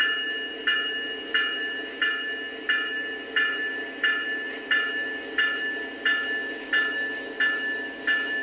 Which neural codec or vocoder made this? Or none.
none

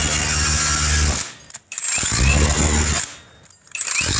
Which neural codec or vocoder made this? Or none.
none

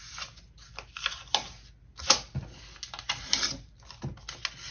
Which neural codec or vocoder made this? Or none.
none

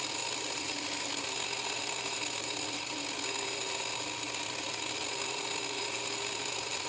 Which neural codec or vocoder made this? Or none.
none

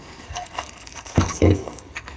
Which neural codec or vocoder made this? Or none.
codec, SNAC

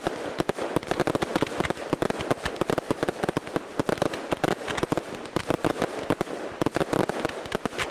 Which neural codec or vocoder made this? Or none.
none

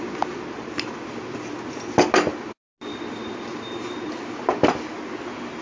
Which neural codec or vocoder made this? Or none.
none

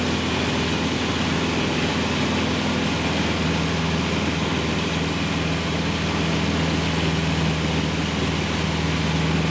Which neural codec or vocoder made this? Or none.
none